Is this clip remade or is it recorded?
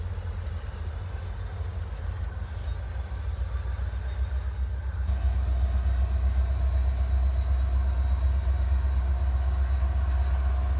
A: recorded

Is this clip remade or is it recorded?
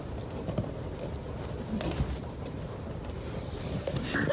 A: recorded